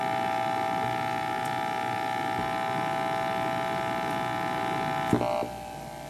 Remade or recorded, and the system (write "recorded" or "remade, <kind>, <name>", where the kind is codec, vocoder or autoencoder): recorded